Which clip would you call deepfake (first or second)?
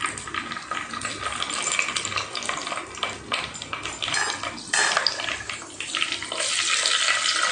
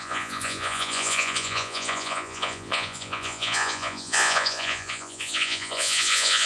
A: second